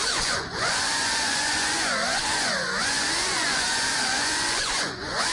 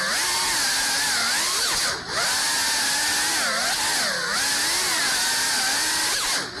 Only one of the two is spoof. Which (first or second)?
first